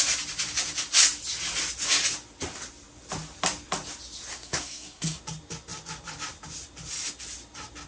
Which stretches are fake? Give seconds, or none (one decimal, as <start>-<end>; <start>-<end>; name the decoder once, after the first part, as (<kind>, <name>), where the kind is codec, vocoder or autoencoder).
4.3-5.2 (codec, SNAC)